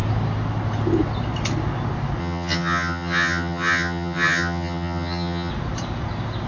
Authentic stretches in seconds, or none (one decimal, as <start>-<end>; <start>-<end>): 0.0-2.2; 5.5-6.5